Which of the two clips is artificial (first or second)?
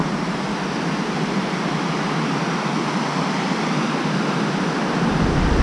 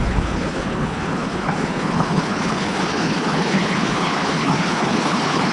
second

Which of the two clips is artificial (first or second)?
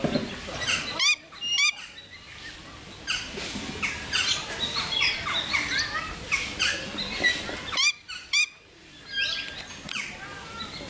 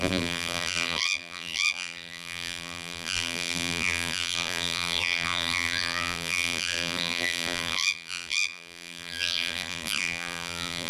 second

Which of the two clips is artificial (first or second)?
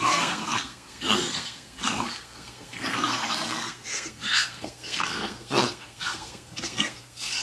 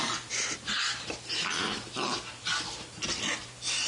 first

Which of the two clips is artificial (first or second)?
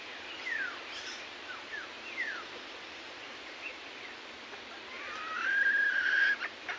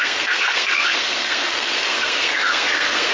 second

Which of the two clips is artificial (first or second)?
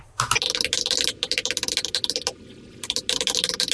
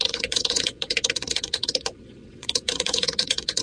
second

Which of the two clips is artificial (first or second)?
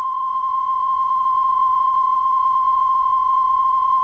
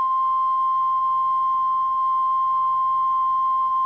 first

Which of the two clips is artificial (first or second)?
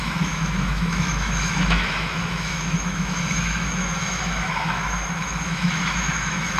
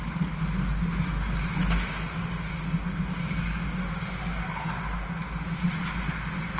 first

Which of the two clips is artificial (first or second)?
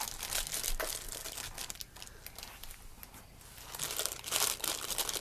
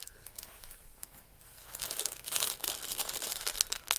second